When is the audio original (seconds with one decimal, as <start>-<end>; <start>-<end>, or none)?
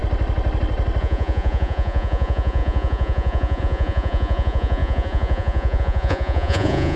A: 0.0-1.0